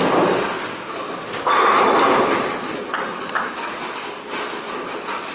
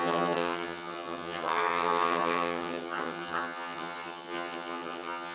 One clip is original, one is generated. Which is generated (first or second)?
second